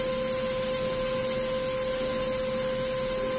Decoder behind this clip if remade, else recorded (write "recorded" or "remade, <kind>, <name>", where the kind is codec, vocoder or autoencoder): recorded